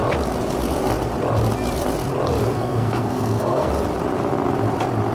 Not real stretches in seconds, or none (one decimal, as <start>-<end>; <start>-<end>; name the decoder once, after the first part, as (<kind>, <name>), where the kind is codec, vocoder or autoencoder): 2.4-3.7 (codec, SNAC)